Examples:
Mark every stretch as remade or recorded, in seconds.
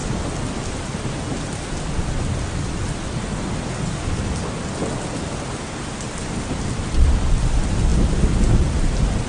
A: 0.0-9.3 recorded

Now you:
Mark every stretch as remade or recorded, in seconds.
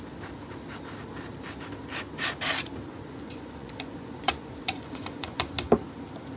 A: 0.0-2.9 recorded; 2.9-5.5 remade; 5.5-6.4 recorded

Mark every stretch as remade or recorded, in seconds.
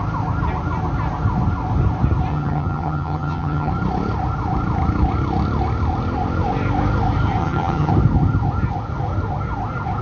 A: 0.0-2.3 recorded; 2.3-3.7 remade; 3.7-7.4 recorded; 7.4-7.9 remade; 7.9-10.0 recorded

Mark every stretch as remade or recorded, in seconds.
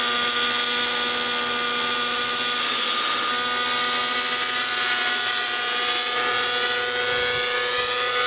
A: 0.0-2.6 recorded; 2.6-3.3 remade; 3.3-8.3 recorded